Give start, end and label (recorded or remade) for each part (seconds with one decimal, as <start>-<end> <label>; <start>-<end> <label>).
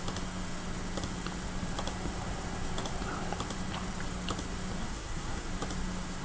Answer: 0.0-4.8 recorded; 4.8-5.5 remade; 5.5-6.2 recorded